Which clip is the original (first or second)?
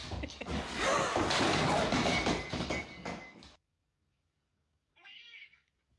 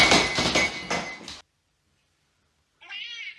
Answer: second